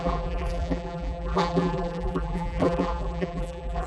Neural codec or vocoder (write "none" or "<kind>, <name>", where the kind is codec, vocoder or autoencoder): vocoder, BigVGAN v2